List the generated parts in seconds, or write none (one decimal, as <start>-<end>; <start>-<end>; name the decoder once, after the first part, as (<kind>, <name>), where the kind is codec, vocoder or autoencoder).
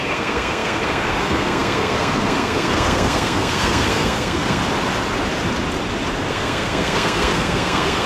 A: 0.0-4.6 (codec, SNAC); 6.3-8.1